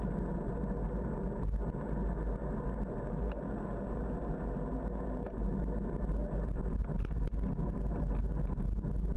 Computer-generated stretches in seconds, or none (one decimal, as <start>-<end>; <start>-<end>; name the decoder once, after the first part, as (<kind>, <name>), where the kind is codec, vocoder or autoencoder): none